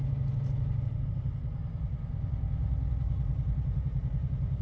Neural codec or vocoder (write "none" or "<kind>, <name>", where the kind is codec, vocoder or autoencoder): none